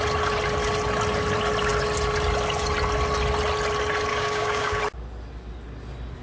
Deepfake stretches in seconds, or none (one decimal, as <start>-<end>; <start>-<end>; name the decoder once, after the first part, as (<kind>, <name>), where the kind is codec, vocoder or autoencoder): 4.1-4.8 (codec, DAC)